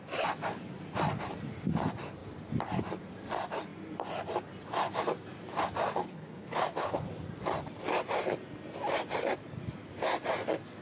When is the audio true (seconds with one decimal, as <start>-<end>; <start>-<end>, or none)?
0.0-6.0; 7.1-10.8